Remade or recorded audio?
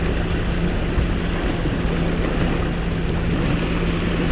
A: recorded